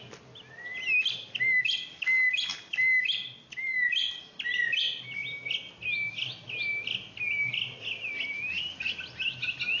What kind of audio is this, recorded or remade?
recorded